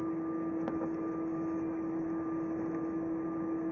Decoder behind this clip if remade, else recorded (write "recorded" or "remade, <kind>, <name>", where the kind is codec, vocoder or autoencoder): recorded